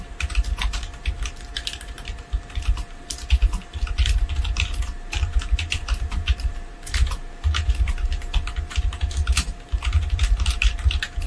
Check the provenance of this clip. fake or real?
fake